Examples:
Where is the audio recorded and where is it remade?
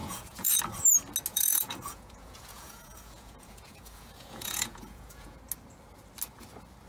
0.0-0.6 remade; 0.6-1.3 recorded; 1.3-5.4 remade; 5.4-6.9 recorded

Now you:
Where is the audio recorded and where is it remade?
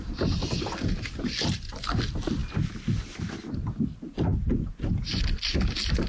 0.0-6.1 recorded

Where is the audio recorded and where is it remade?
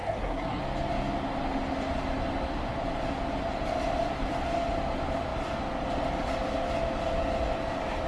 0.0-0.6 remade; 0.6-8.1 recorded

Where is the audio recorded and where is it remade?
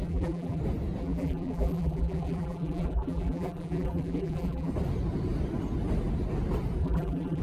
0.0-0.6 remade; 0.6-1.0 recorded; 1.0-4.7 remade; 4.7-6.8 recorded; 6.8-7.4 remade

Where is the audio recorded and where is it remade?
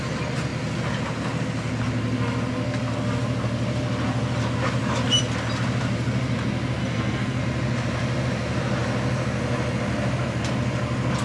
0.0-6.8 recorded; 6.8-7.4 remade; 7.4-11.2 recorded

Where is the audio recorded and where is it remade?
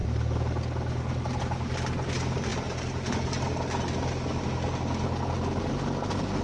0.0-6.4 recorded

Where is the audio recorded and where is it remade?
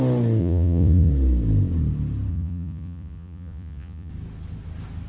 0.0-0.4 recorded; 0.4-1.1 remade; 1.1-2.3 recorded; 2.3-4.1 remade; 4.1-5.1 recorded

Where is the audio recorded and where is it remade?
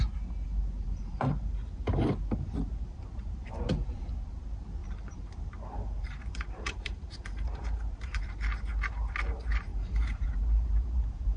0.0-0.8 recorded; 0.8-2.1 remade; 2.1-4.8 recorded; 4.8-8.3 remade; 8.3-9.7 recorded; 9.7-11.4 remade